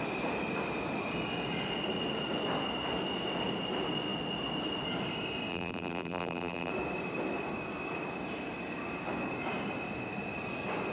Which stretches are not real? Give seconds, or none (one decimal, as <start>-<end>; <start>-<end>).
5.5-6.7